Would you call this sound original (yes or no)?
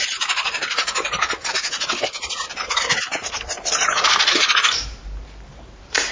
no